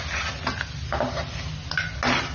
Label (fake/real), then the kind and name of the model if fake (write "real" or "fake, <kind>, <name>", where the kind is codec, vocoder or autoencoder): real